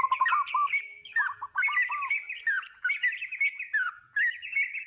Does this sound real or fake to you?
real